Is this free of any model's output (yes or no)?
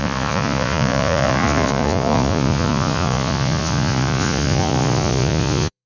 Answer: no